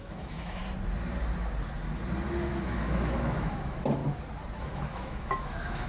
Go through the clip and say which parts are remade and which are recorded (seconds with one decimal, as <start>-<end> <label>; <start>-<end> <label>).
0.0-0.6 remade; 0.6-2.5 recorded; 2.5-4.0 remade; 4.0-4.6 recorded; 4.6-5.9 remade